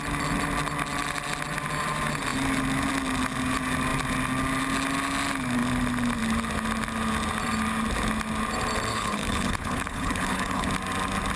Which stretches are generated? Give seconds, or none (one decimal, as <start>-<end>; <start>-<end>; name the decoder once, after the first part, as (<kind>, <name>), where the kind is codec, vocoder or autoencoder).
8.9-10.7 (codec, HILCodec)